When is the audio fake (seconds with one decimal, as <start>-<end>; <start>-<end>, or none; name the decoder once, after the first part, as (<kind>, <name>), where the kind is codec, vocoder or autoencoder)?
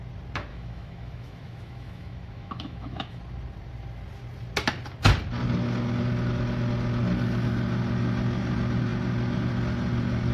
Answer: 0.5-3.2 (autoencoder, DAC-VAE)